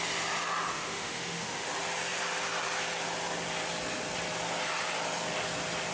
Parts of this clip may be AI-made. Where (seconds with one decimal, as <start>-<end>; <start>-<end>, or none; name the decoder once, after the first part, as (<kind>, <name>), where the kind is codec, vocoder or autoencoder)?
0.7-1.7 (autoencoder, DAC-VAE)